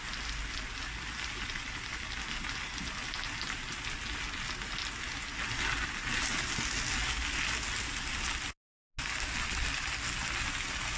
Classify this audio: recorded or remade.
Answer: recorded